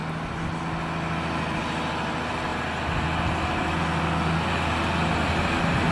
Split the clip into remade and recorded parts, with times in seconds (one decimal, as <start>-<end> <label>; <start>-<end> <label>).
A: 0.0-5.9 recorded